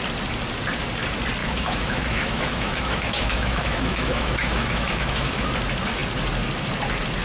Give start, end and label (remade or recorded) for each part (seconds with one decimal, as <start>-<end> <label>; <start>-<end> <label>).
0.0-1.4 recorded; 1.4-5.5 remade; 5.5-7.2 recorded